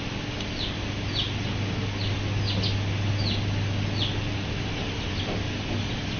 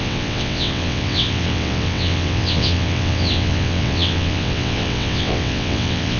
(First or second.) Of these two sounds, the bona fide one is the first